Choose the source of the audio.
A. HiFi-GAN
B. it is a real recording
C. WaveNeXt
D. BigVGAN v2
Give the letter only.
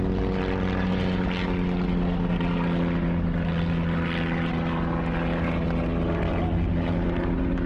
B